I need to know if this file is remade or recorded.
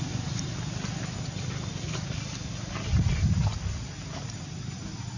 recorded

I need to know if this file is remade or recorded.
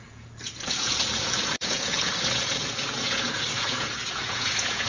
remade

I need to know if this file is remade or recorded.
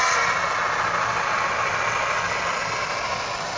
recorded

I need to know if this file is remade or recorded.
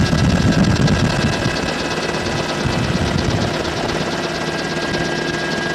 recorded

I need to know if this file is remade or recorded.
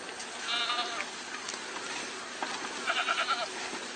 recorded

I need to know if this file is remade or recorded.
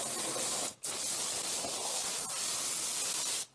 recorded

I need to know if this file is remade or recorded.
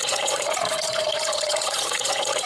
remade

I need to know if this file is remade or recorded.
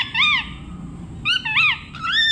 recorded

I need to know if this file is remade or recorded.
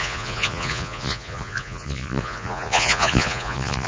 remade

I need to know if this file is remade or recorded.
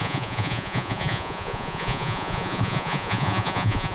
remade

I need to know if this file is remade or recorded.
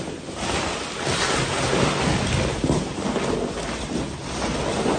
recorded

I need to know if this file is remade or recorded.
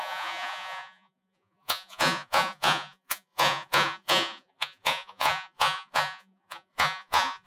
remade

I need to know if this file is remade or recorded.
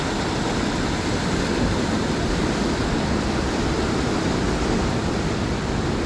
recorded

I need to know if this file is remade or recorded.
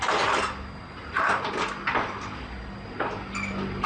recorded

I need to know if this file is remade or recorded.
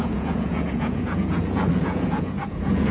remade